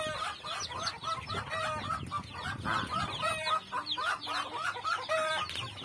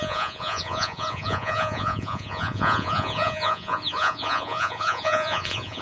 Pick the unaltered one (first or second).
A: first